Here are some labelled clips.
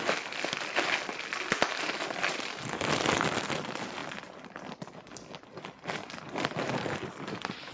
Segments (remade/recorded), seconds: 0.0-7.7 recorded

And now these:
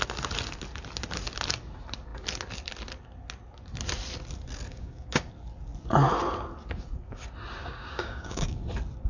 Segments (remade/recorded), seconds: 0.0-4.7 recorded; 4.7-5.3 remade; 5.3-7.6 recorded; 7.6-8.6 remade; 8.6-9.1 recorded

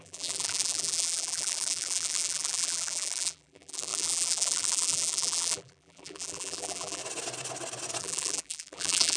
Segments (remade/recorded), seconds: 0.0-7.0 remade; 7.0-8.0 recorded; 8.0-9.2 remade

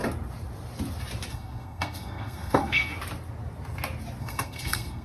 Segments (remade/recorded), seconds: 0.0-1.3 recorded; 1.3-2.9 remade; 2.9-4.2 recorded; 4.2-5.0 remade